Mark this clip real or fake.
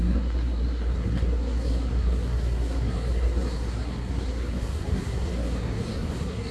fake